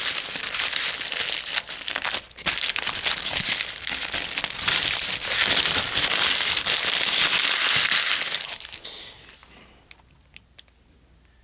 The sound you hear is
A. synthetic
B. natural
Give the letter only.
B